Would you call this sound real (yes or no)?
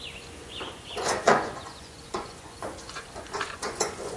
no